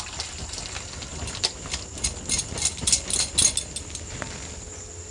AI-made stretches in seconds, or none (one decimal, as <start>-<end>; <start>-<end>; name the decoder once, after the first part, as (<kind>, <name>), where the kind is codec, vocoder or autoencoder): none